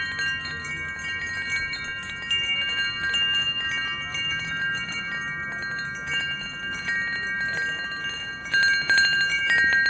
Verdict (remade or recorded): recorded